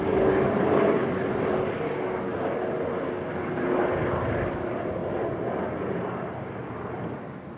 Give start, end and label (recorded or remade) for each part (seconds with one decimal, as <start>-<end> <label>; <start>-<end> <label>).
0.0-1.0 recorded; 1.0-1.7 remade; 1.7-5.0 recorded; 5.0-5.5 remade; 5.5-6.6 recorded; 6.6-7.6 remade